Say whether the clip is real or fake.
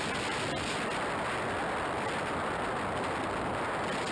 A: real